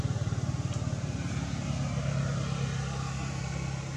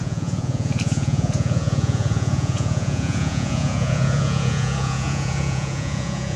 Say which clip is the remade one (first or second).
second